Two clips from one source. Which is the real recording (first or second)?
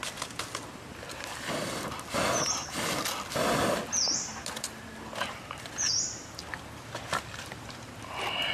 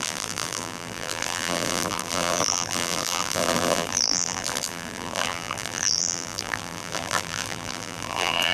first